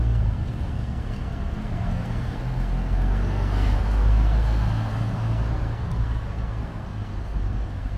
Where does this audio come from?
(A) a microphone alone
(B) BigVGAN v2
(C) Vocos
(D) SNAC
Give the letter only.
D